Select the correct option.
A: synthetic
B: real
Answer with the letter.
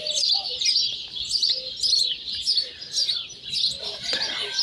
B